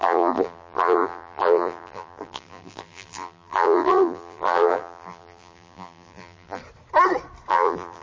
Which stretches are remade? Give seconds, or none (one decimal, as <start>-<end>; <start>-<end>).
0.0-6.6; 7.5-8.0